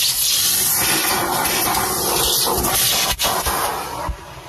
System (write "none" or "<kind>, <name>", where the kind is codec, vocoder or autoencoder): none